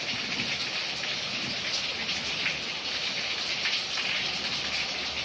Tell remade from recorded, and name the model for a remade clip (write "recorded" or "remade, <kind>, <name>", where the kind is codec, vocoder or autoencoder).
recorded